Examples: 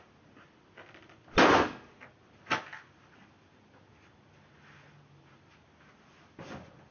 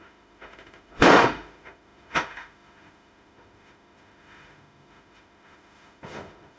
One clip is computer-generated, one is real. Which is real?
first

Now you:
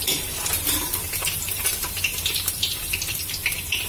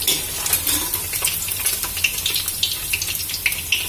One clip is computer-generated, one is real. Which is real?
second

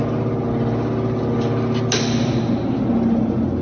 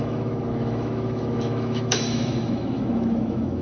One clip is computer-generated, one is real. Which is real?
first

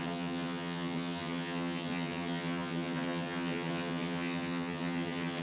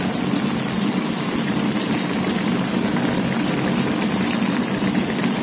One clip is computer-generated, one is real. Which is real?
second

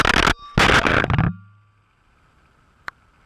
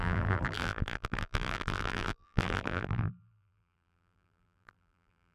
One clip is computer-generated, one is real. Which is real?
first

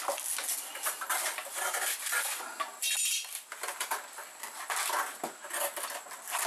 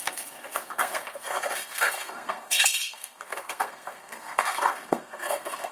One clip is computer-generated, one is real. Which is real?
first